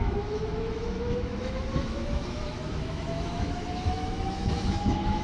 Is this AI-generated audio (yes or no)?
yes